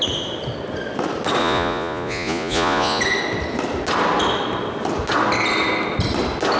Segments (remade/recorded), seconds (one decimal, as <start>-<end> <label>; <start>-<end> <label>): 0.0-1.4 recorded; 1.4-3.0 remade; 3.0-6.6 recorded